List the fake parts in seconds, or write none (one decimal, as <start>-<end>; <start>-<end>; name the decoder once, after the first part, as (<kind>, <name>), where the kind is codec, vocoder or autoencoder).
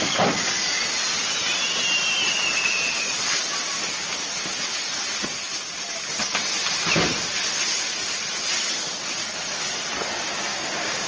10.5-11.1 (codec, DAC)